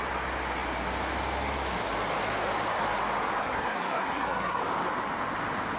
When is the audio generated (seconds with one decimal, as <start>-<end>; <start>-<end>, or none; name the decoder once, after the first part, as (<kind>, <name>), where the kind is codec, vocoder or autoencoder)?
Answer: 3.4-4.6 (codec, SNAC)